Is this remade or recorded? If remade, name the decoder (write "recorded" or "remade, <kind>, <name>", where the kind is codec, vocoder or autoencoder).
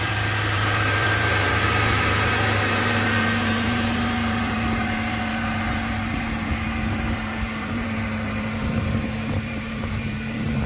remade, vocoder, BigVGAN v2